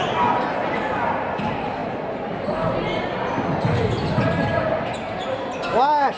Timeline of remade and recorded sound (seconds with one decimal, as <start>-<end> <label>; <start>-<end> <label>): 0.0-6.2 recorded